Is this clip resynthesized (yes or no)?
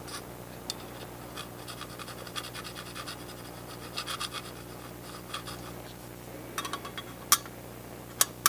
no